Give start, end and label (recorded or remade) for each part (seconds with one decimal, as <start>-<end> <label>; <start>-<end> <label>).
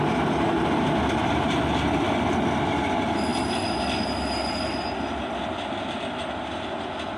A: 0.0-7.2 recorded